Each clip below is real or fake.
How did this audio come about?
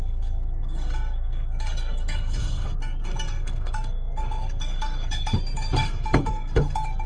fake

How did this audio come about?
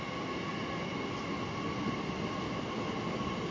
real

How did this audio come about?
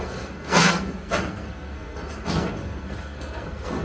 fake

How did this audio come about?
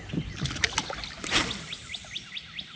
real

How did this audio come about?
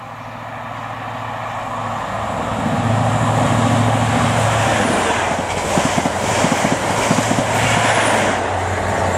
real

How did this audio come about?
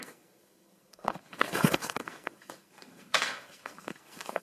fake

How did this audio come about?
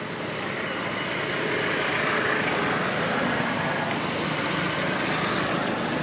real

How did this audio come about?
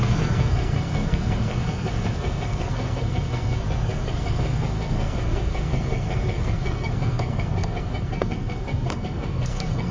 fake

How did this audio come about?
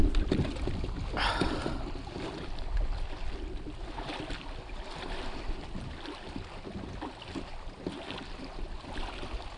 real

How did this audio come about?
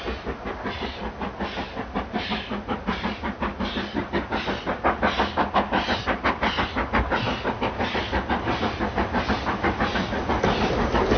real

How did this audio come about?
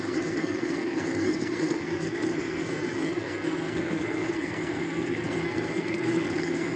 fake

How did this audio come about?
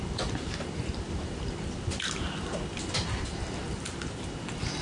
real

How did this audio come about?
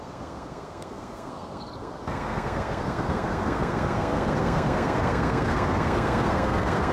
fake